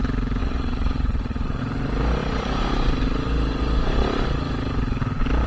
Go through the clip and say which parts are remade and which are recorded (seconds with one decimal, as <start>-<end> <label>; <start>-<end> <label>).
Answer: 0.0-0.4 recorded; 0.4-1.6 remade; 1.6-5.5 recorded